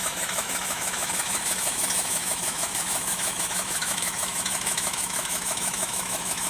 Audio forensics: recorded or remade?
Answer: remade